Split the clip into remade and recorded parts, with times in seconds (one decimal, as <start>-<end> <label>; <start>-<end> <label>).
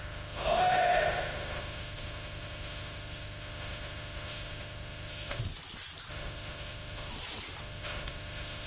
0.0-5.4 remade; 5.4-6.1 recorded; 6.1-7.1 remade; 7.1-7.6 recorded; 7.6-8.7 remade